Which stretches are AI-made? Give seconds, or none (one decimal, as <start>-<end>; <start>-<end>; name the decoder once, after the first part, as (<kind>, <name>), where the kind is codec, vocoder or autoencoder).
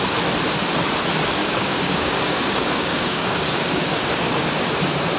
1.4-4.5 (codec, DAC)